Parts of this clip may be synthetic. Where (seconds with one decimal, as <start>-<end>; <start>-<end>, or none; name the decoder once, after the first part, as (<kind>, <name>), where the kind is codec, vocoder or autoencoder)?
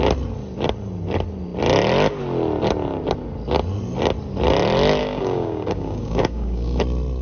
5.0-6.8 (codec, DAC)